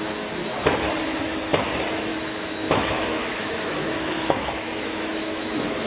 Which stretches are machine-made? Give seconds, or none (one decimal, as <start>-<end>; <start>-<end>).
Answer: 2.1-5.9